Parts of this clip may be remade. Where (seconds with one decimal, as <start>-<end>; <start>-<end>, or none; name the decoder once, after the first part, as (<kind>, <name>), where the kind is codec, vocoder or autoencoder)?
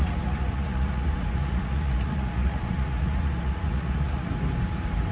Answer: 0.0-4.3 (vocoder, Vocos)